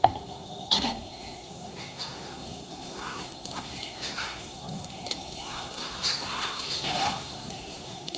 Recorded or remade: remade